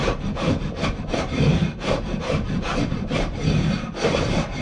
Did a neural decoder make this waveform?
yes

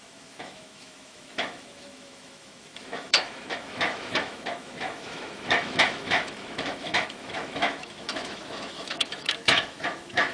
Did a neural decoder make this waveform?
yes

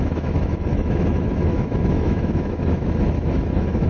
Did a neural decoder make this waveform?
yes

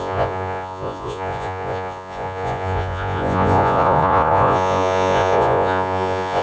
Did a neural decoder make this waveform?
yes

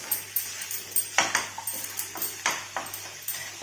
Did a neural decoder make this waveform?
no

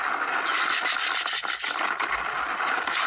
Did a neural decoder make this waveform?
no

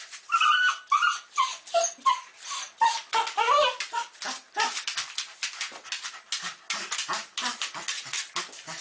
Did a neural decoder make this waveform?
no